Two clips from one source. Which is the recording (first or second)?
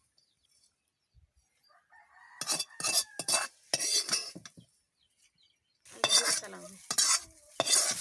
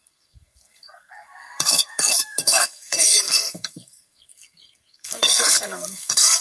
first